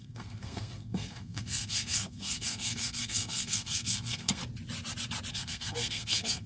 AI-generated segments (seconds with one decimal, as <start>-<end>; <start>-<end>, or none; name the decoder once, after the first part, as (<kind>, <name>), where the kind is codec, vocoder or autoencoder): 0.0-4.4 (codec, SNAC); 5.3-6.5